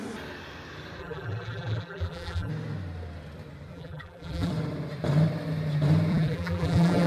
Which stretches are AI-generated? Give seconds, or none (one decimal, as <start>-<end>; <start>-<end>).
1.0-2.5; 3.7-4.5; 6.1-7.1